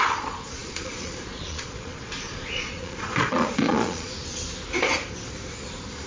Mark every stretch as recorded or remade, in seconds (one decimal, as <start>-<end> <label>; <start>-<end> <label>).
0.0-4.1 remade; 4.1-6.1 recorded